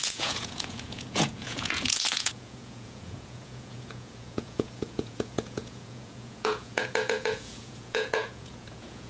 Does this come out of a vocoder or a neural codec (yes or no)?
yes